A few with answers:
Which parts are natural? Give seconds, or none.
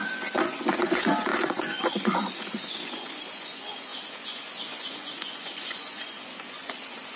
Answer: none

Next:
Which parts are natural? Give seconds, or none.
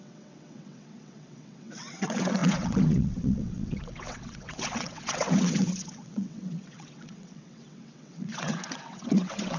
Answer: none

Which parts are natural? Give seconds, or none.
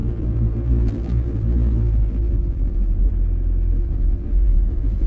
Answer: 3.1-3.8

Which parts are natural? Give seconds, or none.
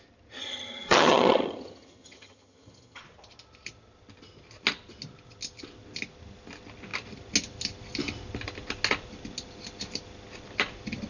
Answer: 0.0-0.4; 3.0-11.1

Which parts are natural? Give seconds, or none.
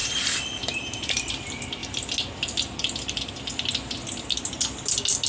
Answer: 1.3-5.3